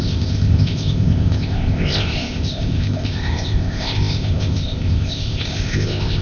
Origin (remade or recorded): remade